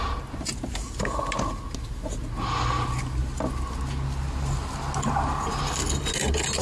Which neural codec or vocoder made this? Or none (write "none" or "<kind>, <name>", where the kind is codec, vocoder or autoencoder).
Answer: none